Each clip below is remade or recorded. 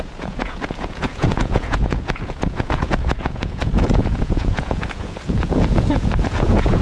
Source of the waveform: remade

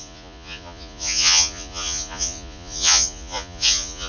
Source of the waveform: remade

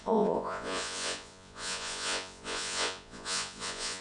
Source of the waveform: remade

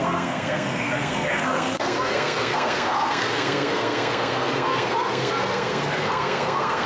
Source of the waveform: remade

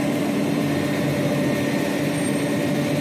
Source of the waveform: recorded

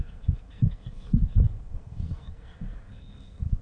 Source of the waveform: remade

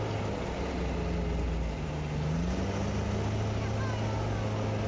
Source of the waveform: recorded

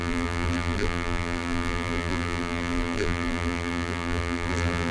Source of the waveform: remade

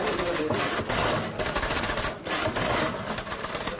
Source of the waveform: recorded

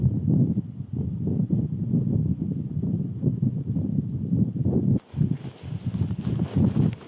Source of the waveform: recorded